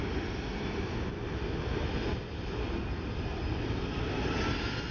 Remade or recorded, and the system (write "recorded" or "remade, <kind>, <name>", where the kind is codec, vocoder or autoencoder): recorded